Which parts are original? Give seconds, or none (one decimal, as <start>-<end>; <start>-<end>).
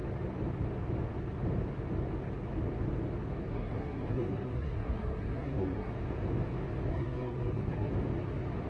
0.0-3.5; 5.9-6.9; 7.9-8.7